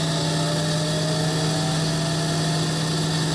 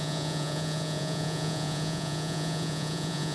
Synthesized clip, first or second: second